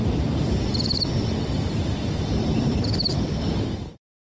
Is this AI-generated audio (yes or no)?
no